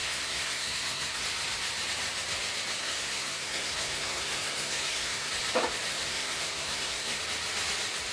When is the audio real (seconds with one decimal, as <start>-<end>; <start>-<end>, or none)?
1.2-2.8; 5.3-5.9; 7.2-8.1